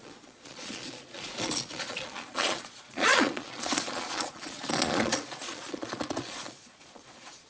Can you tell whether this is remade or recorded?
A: remade